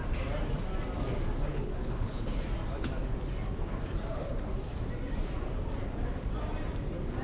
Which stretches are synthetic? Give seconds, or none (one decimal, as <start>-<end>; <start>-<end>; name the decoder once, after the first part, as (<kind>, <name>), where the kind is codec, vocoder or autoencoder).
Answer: 1.5-2.4 (codec, HILCodec)